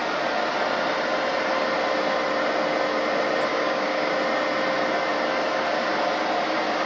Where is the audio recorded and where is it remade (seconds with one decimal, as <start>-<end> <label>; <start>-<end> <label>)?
0.0-3.5 recorded; 3.5-4.1 remade; 4.1-6.9 recorded